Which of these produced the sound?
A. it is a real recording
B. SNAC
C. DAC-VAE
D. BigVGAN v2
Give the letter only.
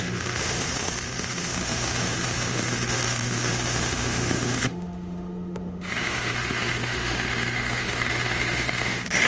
C